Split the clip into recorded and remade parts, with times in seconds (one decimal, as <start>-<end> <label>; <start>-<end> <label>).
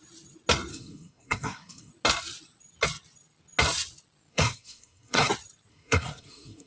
0.0-0.7 recorded; 0.7-1.9 remade; 1.9-4.3 recorded; 4.3-5.3 remade; 5.3-5.7 recorded; 5.7-6.7 remade